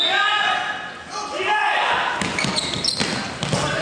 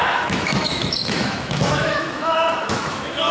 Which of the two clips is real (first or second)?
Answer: first